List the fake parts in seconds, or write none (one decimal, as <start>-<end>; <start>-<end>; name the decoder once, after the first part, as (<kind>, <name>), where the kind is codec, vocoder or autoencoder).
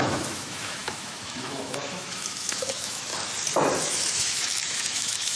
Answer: 0.0-3.1 (autoencoder, DAC-VAE); 3.8-5.4